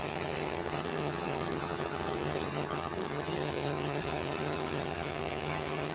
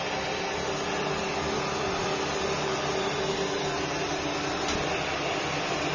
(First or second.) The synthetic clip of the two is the first